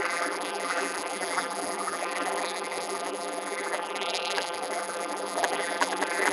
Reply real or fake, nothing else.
fake